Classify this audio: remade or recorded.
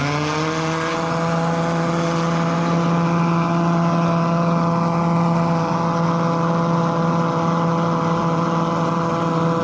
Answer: recorded